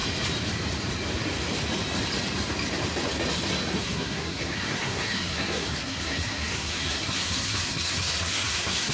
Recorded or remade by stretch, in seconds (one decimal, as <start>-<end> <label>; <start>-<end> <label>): 0.0-3.8 recorded; 3.8-8.9 remade